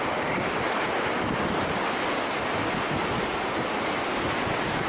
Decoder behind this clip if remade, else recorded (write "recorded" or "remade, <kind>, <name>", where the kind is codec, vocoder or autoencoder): recorded